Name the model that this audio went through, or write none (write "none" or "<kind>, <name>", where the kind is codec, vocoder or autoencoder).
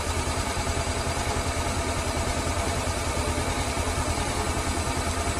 vocoder, BigVGAN v2